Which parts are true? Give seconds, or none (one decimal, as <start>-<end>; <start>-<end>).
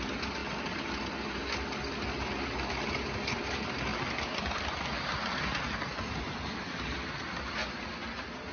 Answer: 0.0-8.5